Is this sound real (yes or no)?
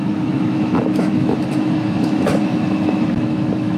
no